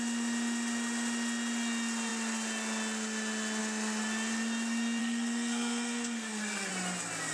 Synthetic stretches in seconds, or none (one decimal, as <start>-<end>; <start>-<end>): 5.0-6.7